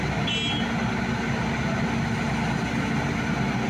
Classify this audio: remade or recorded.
recorded